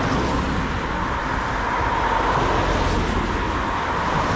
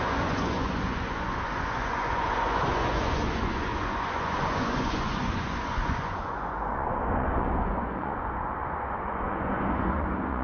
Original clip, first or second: first